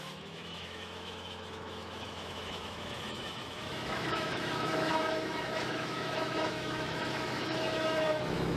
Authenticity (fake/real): fake